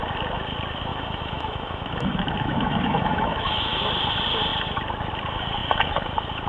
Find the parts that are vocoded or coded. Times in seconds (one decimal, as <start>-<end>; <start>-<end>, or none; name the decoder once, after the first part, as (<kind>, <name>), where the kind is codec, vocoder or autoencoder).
0.9-3.8 (autoencoder, DAC-VAE)

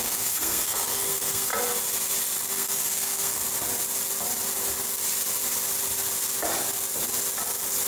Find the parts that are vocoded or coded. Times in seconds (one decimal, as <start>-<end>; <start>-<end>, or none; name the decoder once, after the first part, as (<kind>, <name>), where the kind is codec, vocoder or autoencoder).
0.0-1.5 (codec, SNAC); 2.5-3.4

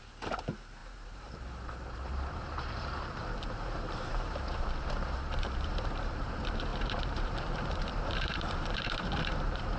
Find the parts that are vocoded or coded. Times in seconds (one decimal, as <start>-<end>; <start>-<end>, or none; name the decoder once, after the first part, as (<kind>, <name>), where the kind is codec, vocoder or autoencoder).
0.0-9.8 (vocoder, BigVGAN v2)

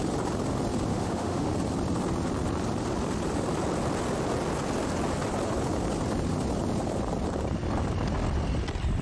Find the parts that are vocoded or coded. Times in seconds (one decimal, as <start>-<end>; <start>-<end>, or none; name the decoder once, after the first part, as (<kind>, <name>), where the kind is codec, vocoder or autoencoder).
0.9-1.5 (autoencoder, DAC-VAE)